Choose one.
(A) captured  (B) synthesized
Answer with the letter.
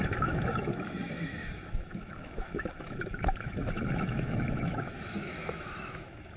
B